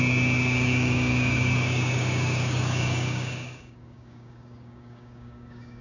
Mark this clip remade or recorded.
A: remade